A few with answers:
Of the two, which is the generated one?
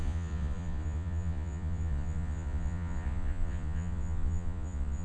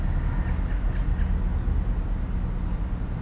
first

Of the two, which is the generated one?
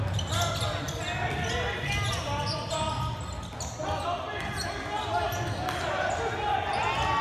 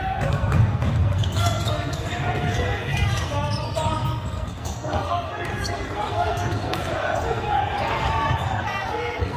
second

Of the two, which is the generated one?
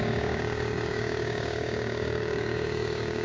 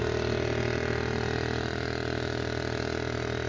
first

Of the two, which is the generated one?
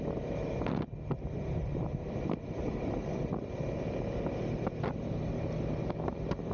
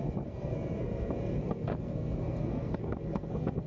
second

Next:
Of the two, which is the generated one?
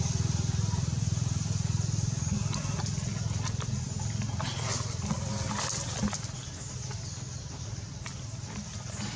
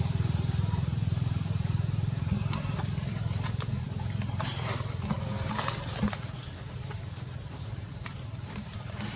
second